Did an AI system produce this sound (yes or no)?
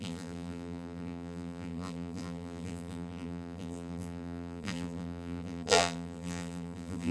yes